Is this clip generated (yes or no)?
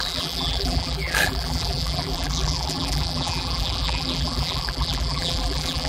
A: yes